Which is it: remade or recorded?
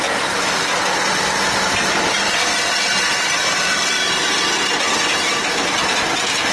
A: recorded